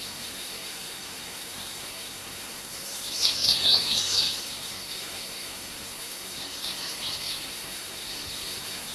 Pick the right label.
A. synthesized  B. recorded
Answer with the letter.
A